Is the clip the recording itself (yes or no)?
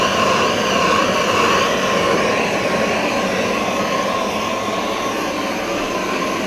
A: yes